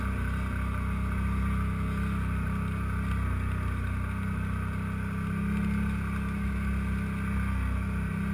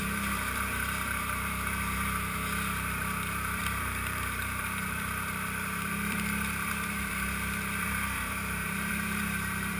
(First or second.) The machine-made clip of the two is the second